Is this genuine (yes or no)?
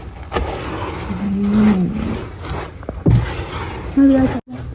yes